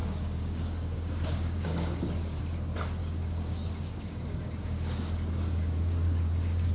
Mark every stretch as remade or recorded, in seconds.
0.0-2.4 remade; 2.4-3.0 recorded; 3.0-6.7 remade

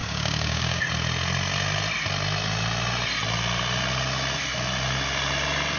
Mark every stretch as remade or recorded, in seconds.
0.0-0.8 remade; 0.8-5.8 recorded

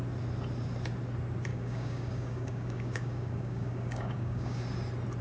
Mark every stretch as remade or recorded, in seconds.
0.0-1.5 recorded; 1.5-4.6 remade; 4.6-5.2 recorded